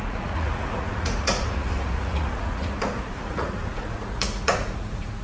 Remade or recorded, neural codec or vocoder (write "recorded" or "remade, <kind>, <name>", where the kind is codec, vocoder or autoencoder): remade, vocoder, Vocos